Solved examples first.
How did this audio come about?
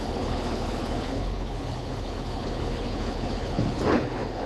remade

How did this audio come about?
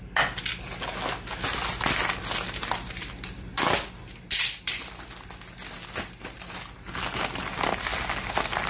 recorded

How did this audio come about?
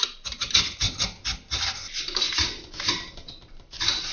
recorded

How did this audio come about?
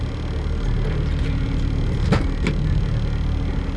recorded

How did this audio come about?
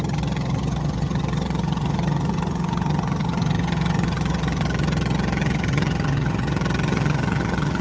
remade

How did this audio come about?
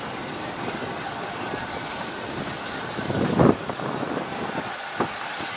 recorded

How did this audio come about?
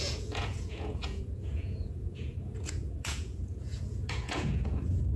remade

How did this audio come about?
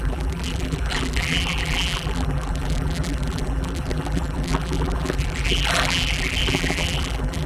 remade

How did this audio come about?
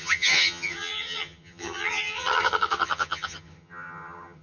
remade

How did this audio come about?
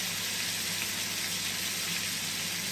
recorded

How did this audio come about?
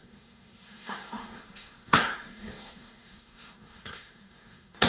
remade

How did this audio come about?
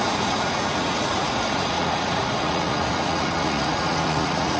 remade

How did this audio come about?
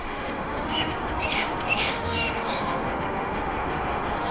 remade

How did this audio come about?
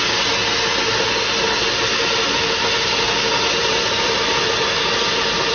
recorded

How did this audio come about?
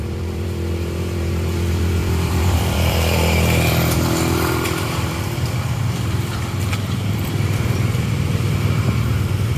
remade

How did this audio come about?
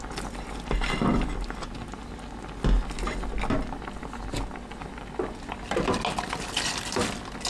recorded